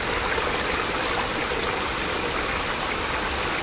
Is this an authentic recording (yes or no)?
yes